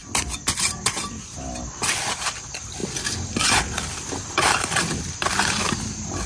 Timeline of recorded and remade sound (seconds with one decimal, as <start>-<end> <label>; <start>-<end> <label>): 0.0-1.2 remade; 1.2-2.8 recorded; 2.8-5.3 remade; 5.3-6.3 recorded